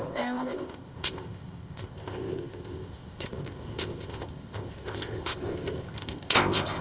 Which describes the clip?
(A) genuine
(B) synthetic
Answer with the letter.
B